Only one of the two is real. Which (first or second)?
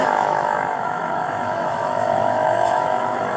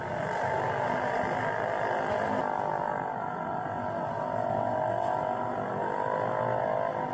second